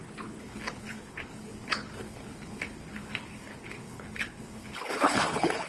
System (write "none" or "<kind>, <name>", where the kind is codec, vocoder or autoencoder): codec, HILCodec